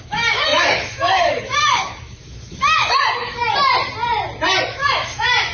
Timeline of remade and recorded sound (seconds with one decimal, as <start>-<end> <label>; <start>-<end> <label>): 0.0-3.4 remade; 3.4-4.7 recorded; 4.7-5.5 remade